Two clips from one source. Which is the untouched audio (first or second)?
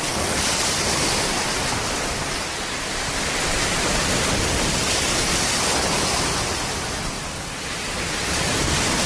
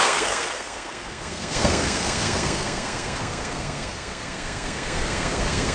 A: first